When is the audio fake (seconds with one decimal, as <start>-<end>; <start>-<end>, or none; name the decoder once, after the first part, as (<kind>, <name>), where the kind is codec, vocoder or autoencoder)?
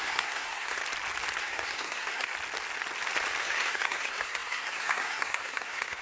0.0-0.8 (codec, SNAC); 1.4-2.3; 3.4-6.0